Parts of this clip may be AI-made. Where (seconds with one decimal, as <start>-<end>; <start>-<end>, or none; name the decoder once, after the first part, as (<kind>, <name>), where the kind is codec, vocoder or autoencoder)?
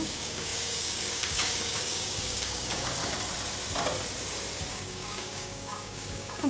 0.0-3.0 (codec, DAC); 4.7-6.5